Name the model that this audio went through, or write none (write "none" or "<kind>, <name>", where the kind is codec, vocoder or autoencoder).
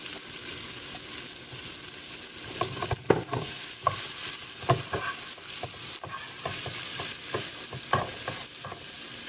none